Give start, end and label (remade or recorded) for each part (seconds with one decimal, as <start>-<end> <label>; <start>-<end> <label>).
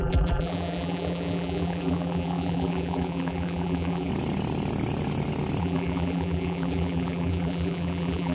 0.0-4.1 remade; 4.1-5.6 recorded; 5.6-8.3 remade